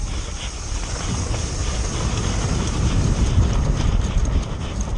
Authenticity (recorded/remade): recorded